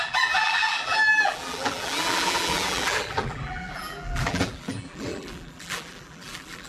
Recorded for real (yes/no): no